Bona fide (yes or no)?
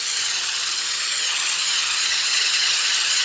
no